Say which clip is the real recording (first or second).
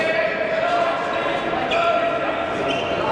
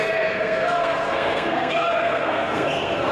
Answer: first